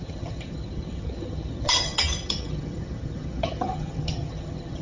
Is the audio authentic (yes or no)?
no